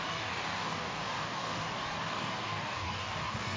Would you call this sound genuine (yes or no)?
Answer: no